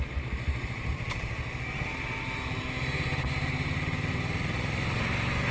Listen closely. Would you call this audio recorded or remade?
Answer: recorded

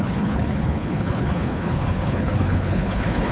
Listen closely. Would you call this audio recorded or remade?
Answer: remade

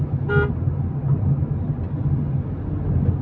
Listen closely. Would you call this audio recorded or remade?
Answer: recorded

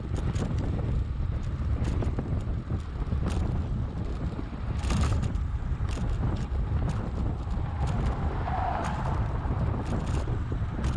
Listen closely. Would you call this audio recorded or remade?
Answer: remade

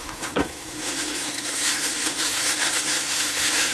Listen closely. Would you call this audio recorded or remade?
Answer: remade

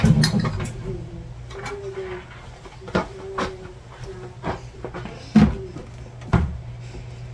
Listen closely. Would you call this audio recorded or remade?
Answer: recorded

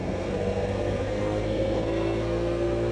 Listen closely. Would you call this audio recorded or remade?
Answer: remade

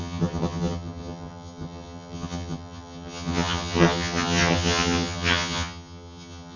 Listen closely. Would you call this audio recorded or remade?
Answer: remade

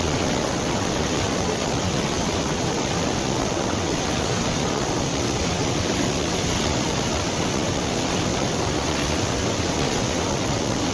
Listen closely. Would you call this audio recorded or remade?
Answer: remade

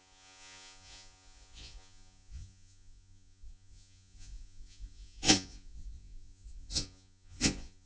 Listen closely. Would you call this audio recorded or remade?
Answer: remade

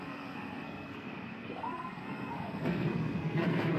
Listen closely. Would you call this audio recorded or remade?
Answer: remade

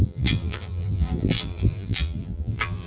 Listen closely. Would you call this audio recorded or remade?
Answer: remade